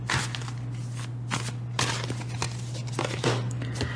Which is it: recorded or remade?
recorded